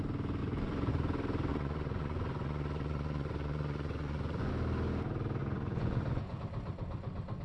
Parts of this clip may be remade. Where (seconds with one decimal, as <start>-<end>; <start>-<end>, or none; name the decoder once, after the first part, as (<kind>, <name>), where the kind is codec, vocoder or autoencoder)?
0.4-0.9 (vocoder, Vocos); 1.5-4.5; 5.4-6.4